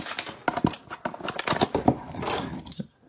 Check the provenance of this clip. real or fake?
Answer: real